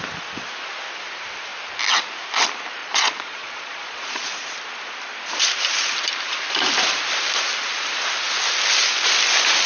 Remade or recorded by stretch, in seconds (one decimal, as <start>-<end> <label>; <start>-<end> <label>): 0.0-2.8 recorded; 2.8-4.3 remade; 4.3-9.7 recorded

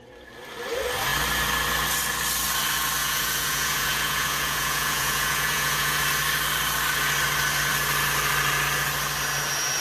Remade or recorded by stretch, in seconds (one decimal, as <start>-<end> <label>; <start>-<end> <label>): 0.0-3.0 recorded; 3.0-6.0 remade; 6.0-9.8 recorded

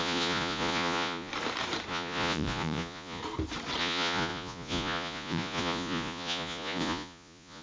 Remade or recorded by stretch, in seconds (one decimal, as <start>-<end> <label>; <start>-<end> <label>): 0.0-1.3 remade; 1.3-1.9 recorded; 1.9-3.2 remade; 3.2-3.8 recorded; 3.8-7.6 remade

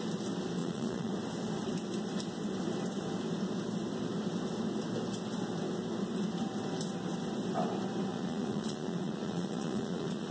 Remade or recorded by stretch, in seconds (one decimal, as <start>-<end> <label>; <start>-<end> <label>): 0.0-0.6 recorded; 0.6-1.1 remade; 1.1-8.1 recorded; 8.1-10.3 remade